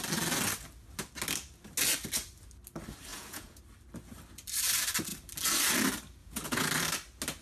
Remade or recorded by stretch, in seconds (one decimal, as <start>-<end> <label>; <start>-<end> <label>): 0.0-3.1 recorded; 3.1-3.6 remade; 3.6-6.2 recorded; 6.2-6.7 remade; 6.7-7.4 recorded